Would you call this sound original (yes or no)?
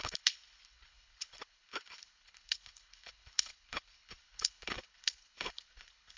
no